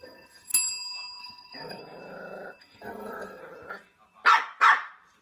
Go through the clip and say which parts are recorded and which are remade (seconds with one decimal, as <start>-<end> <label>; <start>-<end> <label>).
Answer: 0.0-0.5 remade; 0.5-1.2 recorded; 1.2-1.8 remade; 1.8-2.6 recorded; 2.6-3.4 remade; 3.4-5.2 recorded